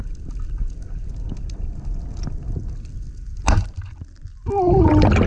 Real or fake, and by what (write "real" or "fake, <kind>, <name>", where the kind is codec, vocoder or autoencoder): real